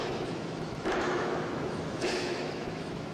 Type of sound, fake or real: fake